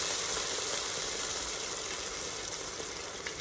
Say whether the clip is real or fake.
real